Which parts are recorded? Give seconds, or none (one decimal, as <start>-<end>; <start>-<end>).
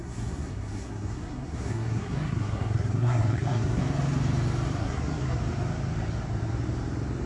3.8-4.8; 5.4-7.3